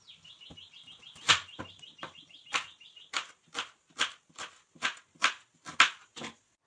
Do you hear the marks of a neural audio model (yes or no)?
no